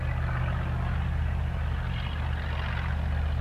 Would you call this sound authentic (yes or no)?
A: yes